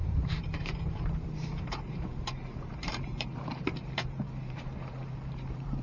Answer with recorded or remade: remade